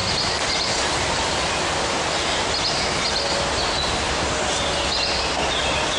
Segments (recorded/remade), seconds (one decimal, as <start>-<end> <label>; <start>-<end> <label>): 0.0-6.0 recorded